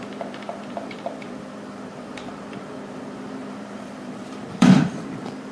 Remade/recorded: remade